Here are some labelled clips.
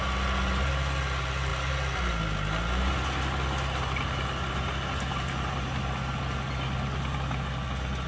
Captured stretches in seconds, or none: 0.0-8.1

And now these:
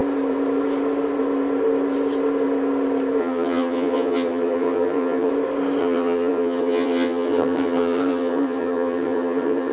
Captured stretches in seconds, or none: 0.0-3.2; 5.3-5.8